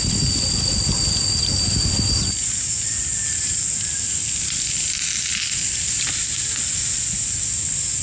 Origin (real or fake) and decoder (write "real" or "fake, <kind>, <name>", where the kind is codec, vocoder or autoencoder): real